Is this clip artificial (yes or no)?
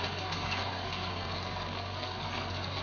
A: yes